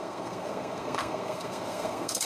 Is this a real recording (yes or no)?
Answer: no